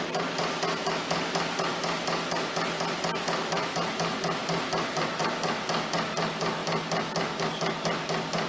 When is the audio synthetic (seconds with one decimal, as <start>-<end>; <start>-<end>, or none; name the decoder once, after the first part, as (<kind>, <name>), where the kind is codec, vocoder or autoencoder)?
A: none